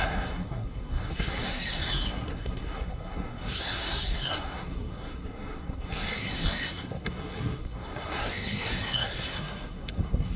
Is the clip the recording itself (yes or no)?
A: no